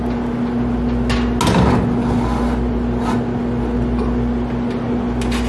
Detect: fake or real real